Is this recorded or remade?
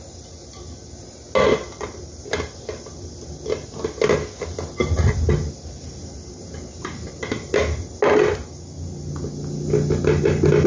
recorded